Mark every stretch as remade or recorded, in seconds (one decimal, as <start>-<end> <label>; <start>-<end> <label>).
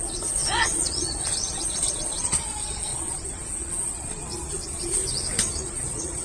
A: 0.0-5.0 remade; 5.0-5.5 recorded; 5.5-6.2 remade